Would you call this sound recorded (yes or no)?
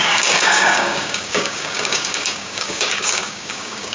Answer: no